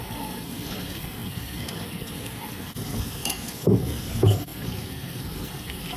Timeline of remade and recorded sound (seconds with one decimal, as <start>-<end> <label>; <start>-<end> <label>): 0.0-6.0 remade